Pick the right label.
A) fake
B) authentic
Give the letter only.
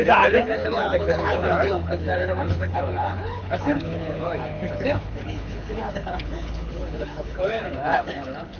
A